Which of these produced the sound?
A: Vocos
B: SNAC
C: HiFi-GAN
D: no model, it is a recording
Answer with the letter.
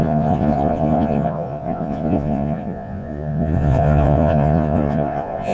A